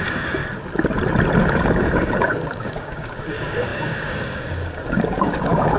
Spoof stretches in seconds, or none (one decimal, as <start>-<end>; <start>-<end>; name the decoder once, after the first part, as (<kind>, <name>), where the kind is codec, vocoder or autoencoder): 0.0-0.4 (codec, DAC); 1.4-5.8